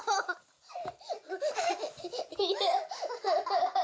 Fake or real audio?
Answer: real